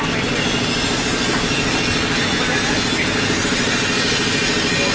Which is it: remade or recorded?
recorded